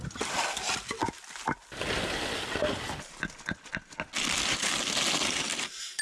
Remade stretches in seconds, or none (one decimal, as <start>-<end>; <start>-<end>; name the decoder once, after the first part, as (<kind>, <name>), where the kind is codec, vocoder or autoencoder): none